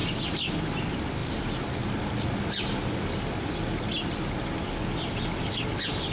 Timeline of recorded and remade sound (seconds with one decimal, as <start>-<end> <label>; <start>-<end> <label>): 0.0-6.1 recorded